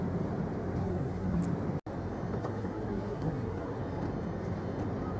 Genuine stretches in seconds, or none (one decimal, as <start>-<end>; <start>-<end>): 0.0-0.8; 1.4-2.4; 3.8-5.2

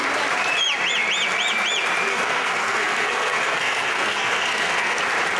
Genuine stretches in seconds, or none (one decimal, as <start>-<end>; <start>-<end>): 0.0-2.1; 5.0-5.4

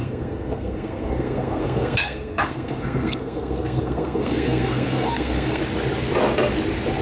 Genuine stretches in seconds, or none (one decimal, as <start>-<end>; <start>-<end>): 5.6-7.0

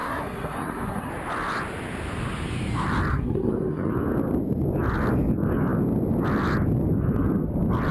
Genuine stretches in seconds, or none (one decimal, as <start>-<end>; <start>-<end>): 1.1-3.1; 3.9-7.9

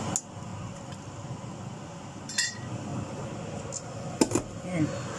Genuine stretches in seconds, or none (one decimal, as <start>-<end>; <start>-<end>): 0.0-5.2

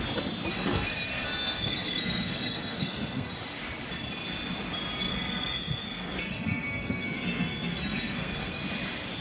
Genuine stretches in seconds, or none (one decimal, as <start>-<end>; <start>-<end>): 0.0-0.5; 3.3-5.1; 8.6-9.2

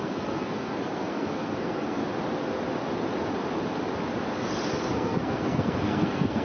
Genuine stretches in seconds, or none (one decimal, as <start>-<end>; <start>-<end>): 2.0-4.9

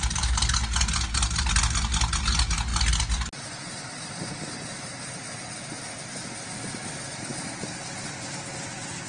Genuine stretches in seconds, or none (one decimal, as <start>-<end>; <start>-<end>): 0.0-9.1